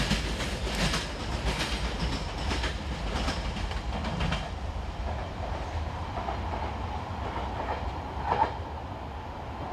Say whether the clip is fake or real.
real